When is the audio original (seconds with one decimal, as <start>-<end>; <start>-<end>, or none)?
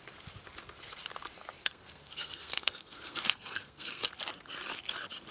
0.0-1.6; 4.1-5.3